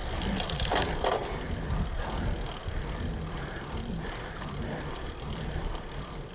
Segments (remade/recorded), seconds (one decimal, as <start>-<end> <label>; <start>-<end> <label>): 0.0-6.3 recorded